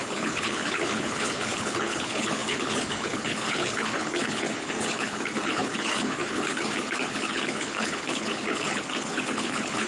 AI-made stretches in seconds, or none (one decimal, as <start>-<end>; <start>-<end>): 0.0-9.9